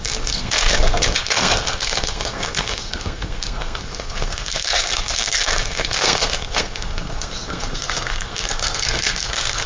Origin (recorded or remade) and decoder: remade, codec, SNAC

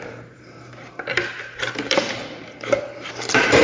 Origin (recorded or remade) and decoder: remade, vocoder, BigVGAN v2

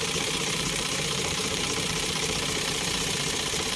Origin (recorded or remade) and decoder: remade, vocoder, BigVGAN v2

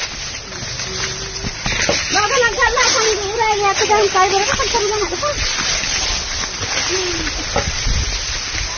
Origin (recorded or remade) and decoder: recorded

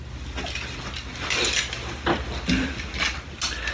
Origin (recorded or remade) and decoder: recorded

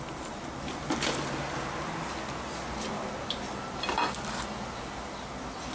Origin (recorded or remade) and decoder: recorded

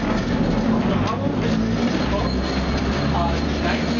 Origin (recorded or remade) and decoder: recorded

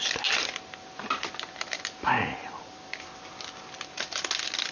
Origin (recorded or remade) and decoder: recorded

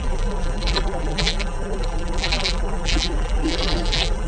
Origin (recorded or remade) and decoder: remade, vocoder, BigVGAN v2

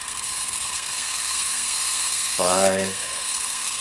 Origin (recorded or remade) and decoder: remade, codec, SNAC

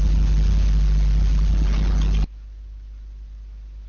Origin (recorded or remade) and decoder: recorded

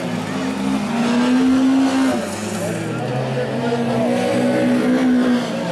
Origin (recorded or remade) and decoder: recorded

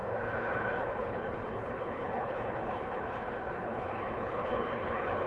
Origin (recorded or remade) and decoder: remade, codec, HILCodec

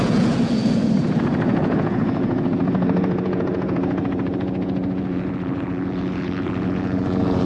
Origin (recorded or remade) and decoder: remade, vocoder, Vocos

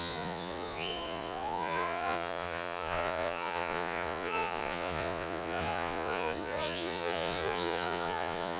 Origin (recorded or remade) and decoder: remade, vocoder, Vocos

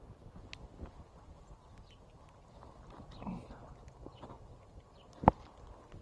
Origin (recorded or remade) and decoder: recorded